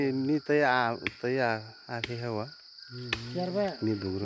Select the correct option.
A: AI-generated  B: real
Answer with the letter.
B